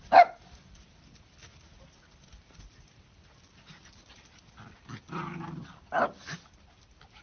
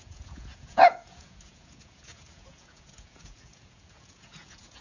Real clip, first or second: first